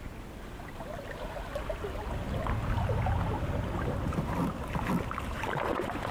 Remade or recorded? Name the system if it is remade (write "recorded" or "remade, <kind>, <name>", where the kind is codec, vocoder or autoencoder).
recorded